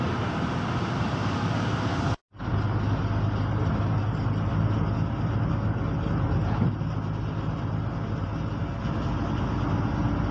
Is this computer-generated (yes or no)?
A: no